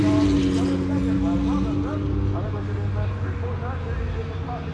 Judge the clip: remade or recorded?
recorded